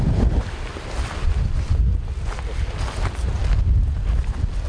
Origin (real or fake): real